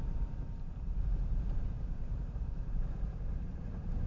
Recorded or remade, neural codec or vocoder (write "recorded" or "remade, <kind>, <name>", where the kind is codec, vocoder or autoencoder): remade, vocoder, BigVGAN v2